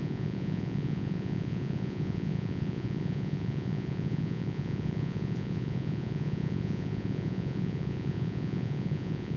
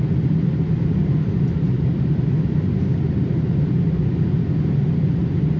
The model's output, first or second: first